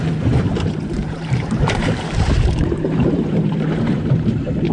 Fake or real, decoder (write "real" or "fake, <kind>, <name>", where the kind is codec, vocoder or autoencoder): fake, vocoder, BigVGAN v2